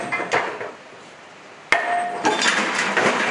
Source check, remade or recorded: recorded